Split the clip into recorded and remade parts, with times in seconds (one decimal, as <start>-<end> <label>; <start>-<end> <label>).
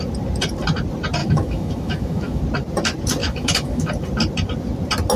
0.0-1.2 recorded; 1.2-2.4 remade; 2.4-3.2 recorded; 3.2-3.9 remade; 3.9-5.2 recorded